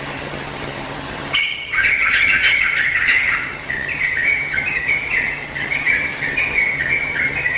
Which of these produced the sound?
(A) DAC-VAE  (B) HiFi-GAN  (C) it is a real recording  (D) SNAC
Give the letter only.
B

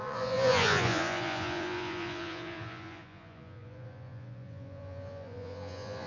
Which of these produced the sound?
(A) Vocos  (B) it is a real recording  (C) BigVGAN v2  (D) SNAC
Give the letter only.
A